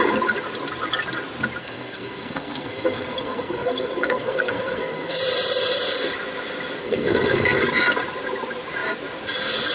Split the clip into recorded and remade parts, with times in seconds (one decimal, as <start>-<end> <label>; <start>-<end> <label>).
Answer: 0.0-1.6 recorded; 1.6-5.2 remade; 5.2-6.8 recorded; 6.8-7.6 remade; 7.6-9.7 recorded